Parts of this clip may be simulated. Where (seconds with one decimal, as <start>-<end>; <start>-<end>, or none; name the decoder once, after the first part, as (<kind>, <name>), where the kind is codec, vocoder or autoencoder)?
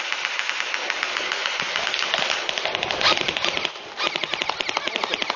none